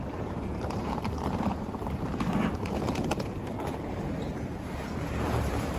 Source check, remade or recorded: remade